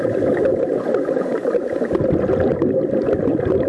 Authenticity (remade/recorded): recorded